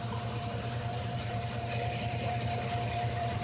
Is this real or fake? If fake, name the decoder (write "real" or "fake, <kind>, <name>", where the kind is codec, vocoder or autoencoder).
fake, vocoder, BigVGAN v2